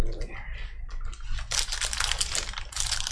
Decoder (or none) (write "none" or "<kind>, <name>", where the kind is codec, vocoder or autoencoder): none